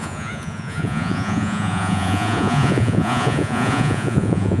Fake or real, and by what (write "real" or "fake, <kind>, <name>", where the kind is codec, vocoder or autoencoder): fake, vocoder, Vocos